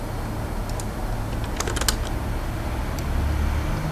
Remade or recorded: recorded